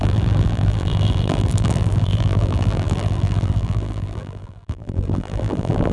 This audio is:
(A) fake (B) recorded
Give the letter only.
A